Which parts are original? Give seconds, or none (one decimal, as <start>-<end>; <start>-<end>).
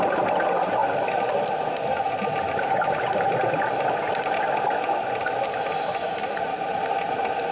0.0-7.5